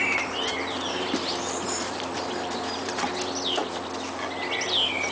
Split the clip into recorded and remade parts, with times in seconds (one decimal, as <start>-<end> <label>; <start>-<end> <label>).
0.0-3.1 remade; 3.1-5.1 recorded